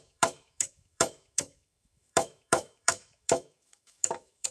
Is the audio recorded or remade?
remade